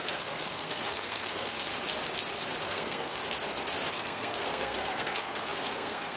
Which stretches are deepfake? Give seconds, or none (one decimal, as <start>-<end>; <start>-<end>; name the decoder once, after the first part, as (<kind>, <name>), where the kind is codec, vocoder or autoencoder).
0.0-1.7 (codec, SNAC); 2.6-3.2; 3.9-6.2